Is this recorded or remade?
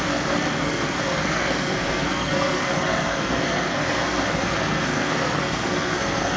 remade